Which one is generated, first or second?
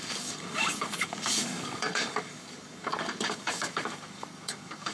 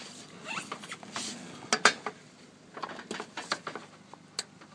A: first